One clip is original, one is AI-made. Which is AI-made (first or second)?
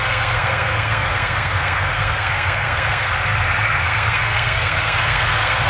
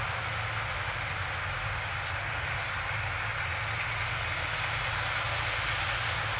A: first